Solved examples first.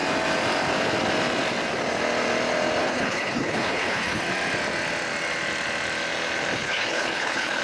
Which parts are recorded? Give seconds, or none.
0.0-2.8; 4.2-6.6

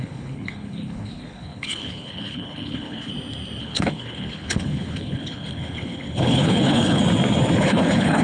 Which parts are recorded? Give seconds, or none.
3.1-3.6; 7.0-7.6

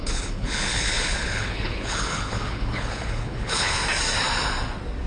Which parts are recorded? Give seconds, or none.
3.8-5.1